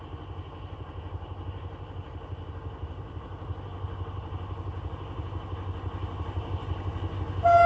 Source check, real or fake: real